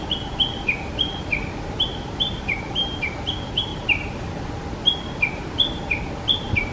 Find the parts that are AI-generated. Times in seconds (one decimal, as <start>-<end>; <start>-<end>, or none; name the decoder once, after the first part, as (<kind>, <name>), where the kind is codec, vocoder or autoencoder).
1.9-3.1 (vocoder, BigVGAN v2); 3.7-4.5